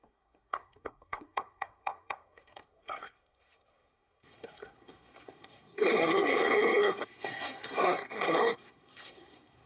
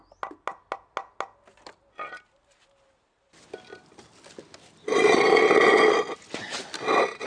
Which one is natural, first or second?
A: second